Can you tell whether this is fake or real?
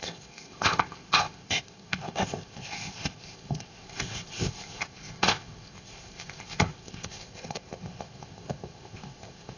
fake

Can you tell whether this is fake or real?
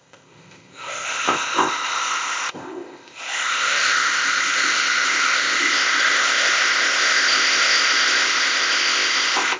fake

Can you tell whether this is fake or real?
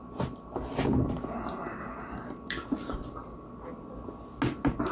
real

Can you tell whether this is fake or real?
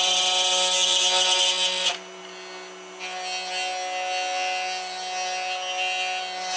real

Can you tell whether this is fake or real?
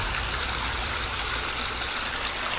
real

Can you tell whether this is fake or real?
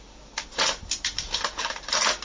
real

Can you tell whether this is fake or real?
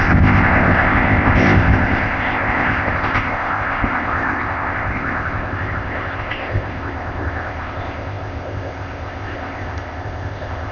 fake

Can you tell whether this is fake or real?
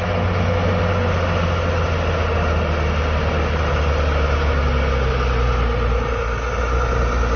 real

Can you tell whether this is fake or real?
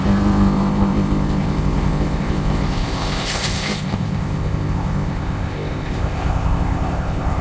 fake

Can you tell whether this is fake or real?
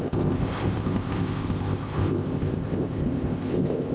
fake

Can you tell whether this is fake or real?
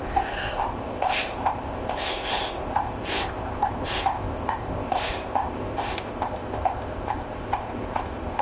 fake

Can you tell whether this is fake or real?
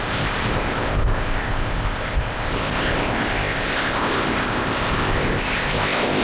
fake